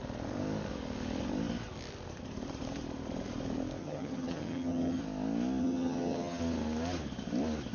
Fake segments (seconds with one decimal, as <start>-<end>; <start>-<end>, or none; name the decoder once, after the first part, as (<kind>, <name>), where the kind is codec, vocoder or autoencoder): 3.8-5.0 (vocoder, HiFi-GAN); 5.6-6.4